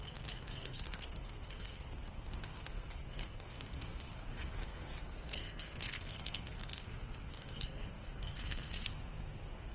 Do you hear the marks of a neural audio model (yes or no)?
yes